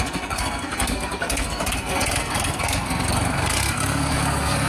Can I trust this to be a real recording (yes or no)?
no